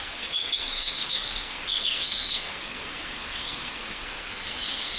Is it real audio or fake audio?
fake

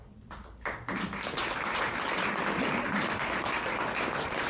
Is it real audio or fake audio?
real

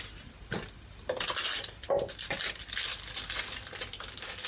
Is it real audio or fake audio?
real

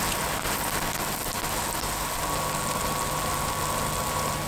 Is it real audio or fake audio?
real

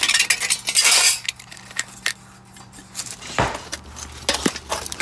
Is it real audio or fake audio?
real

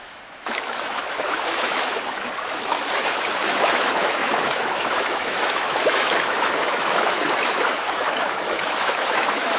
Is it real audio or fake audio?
fake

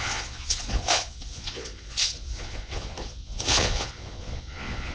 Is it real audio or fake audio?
fake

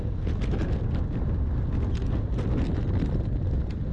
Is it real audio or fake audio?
real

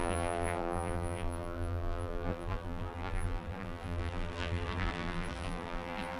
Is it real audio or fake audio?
fake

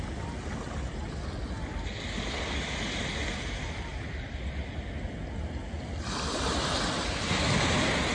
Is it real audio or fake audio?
real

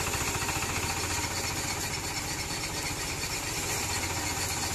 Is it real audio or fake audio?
real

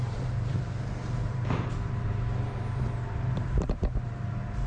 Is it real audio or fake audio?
fake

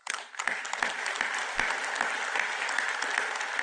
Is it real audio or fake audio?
real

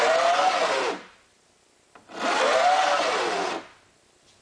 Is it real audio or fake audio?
real